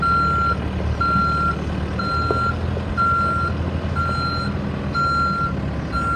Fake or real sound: real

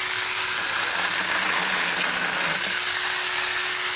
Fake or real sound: real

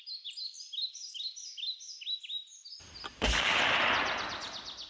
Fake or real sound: real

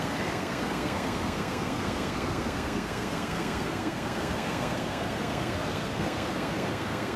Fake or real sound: fake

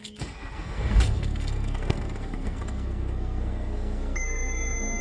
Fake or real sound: fake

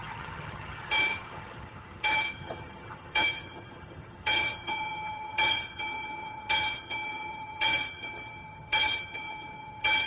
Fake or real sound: fake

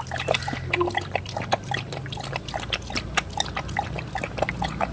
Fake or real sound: real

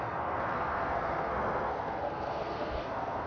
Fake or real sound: fake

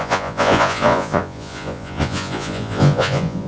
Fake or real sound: fake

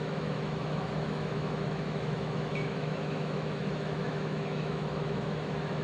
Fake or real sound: fake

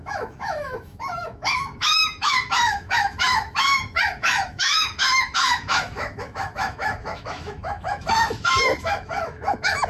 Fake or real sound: fake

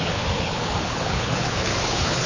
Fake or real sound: fake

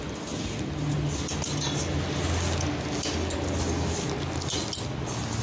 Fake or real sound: real